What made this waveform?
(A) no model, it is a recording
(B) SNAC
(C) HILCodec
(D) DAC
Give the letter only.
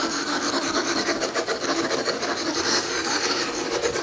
D